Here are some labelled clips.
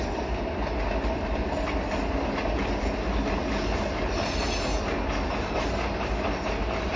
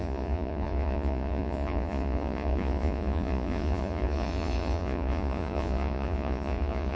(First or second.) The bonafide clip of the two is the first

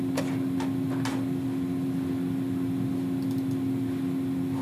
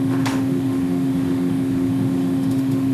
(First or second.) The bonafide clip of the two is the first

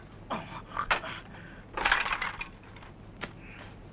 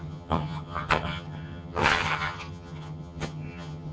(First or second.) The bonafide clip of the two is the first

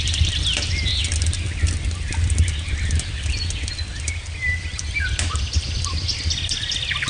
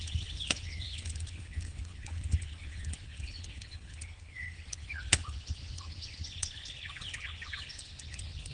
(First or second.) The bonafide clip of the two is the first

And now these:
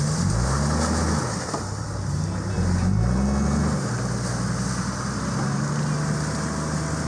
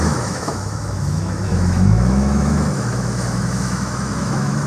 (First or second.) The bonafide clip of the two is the first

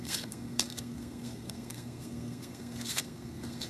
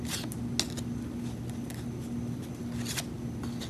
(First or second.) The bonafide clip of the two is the second